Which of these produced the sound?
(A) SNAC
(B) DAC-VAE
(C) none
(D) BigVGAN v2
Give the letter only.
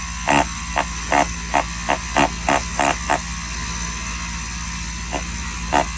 C